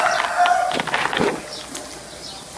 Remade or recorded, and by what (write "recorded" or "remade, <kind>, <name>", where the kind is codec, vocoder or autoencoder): recorded